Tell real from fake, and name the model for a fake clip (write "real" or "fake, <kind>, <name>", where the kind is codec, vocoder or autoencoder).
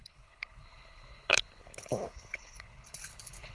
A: fake, codec, HILCodec